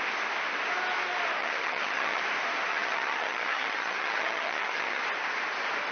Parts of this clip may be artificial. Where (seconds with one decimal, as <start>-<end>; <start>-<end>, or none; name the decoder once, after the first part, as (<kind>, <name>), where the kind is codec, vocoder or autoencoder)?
1.4-2.2 (vocoder, HiFi-GAN); 2.7-5.0